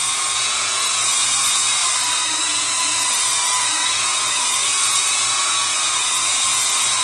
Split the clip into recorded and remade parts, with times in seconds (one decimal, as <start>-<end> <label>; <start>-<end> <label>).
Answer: 0.0-1.8 remade; 1.8-2.4 recorded; 2.4-7.0 remade